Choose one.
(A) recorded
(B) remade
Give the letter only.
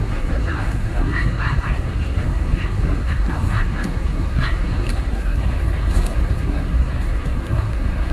B